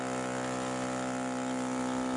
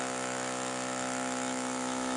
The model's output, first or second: second